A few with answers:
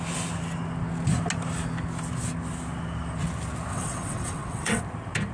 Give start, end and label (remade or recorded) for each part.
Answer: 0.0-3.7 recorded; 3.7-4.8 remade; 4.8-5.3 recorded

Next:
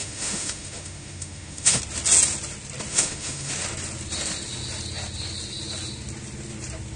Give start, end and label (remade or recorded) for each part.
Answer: 0.0-1.8 remade; 1.8-2.9 recorded; 2.9-3.5 remade; 3.5-7.0 recorded

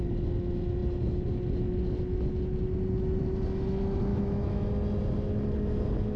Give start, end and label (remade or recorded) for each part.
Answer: 0.0-4.1 recorded; 4.1-4.7 remade; 4.7-6.2 recorded

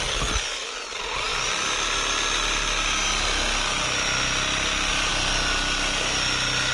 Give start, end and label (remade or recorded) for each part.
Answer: 0.0-6.7 recorded

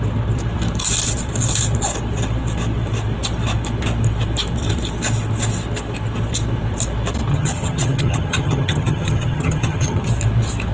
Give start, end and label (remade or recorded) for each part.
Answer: 0.0-7.3 recorded; 7.3-10.1 remade; 10.1-10.7 recorded

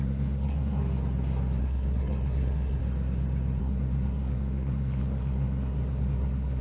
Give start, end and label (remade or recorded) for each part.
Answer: 0.0-0.8 remade; 0.8-1.6 recorded; 1.6-2.8 remade; 2.8-3.6 recorded; 3.6-6.6 remade

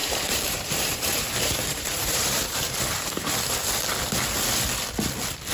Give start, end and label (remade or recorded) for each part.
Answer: 0.0-3.3 remade; 3.3-5.5 recorded

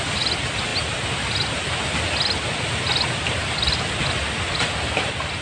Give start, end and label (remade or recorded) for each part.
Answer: 0.0-5.4 recorded